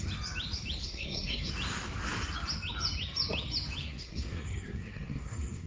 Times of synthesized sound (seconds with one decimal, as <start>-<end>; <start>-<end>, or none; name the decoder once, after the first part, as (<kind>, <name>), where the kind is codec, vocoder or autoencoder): 0.8-1.5 (codec, SNAC); 3.8-5.7